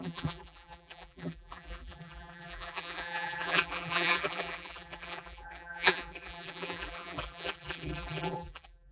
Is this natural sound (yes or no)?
no